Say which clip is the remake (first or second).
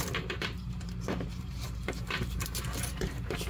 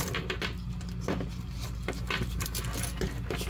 first